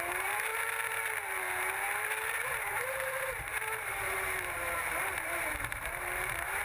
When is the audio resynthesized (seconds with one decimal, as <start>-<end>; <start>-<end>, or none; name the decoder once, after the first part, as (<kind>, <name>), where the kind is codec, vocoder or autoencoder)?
0.0-0.5 (vocoder, BigVGAN v2); 2.0-6.6